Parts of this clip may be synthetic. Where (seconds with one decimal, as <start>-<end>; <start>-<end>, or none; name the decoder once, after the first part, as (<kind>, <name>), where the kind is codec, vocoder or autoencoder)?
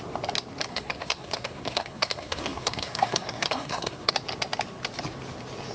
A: 0.7-4.1 (codec, SNAC)